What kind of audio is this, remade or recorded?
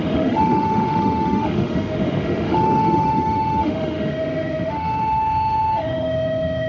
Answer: remade